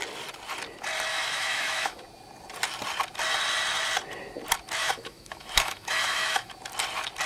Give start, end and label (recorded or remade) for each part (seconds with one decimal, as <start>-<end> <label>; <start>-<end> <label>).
0.0-1.1 recorded; 1.1-2.0 remade; 2.0-4.8 recorded; 4.8-6.5 remade; 6.5-7.3 recorded